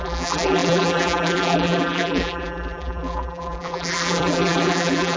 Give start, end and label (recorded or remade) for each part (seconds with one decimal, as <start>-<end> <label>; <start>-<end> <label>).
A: 0.0-5.2 remade

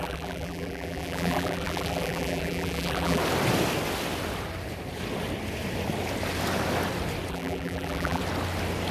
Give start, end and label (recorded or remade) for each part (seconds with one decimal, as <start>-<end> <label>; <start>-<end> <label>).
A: 0.0-3.2 remade; 3.2-7.3 recorded; 7.3-8.2 remade; 8.2-8.9 recorded

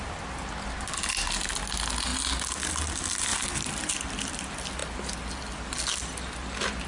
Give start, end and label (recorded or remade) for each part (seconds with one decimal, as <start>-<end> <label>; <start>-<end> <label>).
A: 0.0-3.3 recorded; 3.3-4.1 remade; 4.1-6.9 recorded

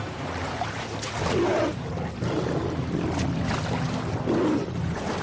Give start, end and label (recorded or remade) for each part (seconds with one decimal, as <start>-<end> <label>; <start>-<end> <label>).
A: 0.0-0.4 recorded; 0.4-1.0 remade; 1.0-1.5 recorded; 1.5-2.8 remade; 2.8-4.6 recorded; 4.6-5.2 remade

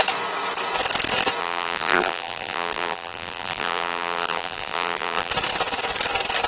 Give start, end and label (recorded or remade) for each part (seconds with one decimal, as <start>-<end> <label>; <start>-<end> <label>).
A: 0.0-1.4 recorded; 1.4-5.3 remade; 5.3-6.5 recorded